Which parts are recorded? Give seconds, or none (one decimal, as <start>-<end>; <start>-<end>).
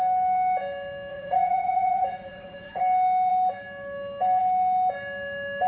0.0-1.1; 2.8-5.7